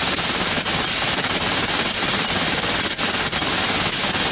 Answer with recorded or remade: remade